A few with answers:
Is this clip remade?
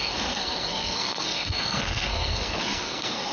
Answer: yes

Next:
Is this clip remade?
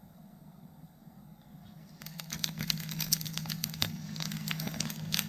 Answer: yes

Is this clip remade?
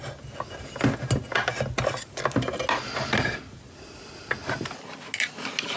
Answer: no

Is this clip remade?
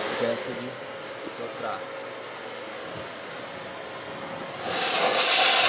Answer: no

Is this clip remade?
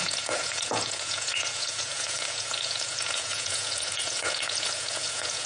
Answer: yes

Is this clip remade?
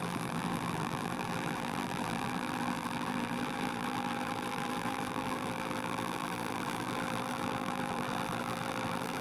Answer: yes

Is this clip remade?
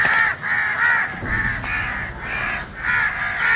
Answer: no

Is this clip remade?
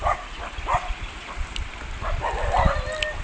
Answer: no